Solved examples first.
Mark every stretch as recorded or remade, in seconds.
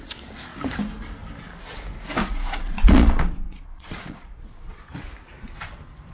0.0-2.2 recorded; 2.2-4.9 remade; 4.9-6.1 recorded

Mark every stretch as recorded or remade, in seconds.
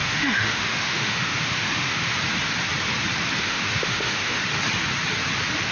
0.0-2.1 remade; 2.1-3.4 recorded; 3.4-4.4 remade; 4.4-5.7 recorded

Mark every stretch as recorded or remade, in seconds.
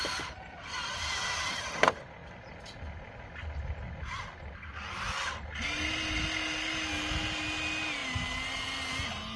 0.0-9.4 recorded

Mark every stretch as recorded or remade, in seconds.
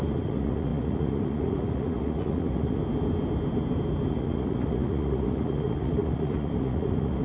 0.0-2.8 remade; 2.8-4.1 recorded; 4.1-7.2 remade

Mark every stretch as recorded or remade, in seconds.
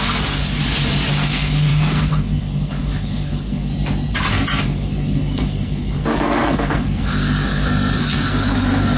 0.0-0.4 remade; 0.4-1.1 recorded; 1.1-3.7 remade; 3.7-4.3 recorded; 4.3-9.0 remade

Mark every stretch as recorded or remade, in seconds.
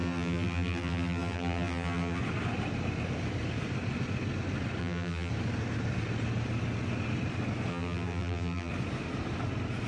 0.0-2.2 remade; 2.2-4.8 recorded; 4.8-5.3 remade; 5.3-7.7 recorded; 7.7-8.7 remade; 8.7-9.9 recorded